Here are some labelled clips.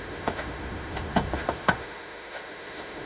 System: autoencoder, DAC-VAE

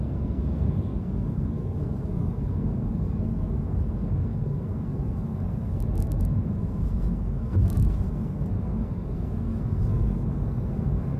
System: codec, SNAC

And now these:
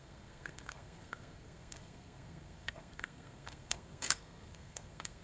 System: codec, SNAC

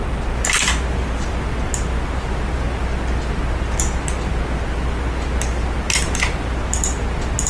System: none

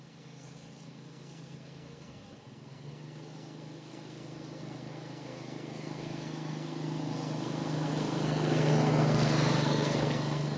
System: codec, SNAC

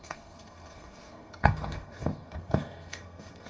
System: codec, SNAC